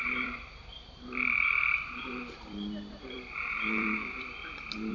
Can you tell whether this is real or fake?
fake